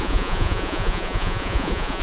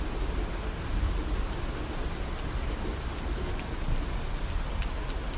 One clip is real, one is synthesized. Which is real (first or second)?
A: second